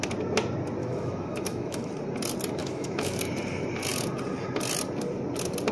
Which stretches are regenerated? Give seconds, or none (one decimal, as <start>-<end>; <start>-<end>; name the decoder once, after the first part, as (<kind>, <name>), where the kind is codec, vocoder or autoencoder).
0.8-1.9 (autoencoder, DAC-VAE); 2.6-3.2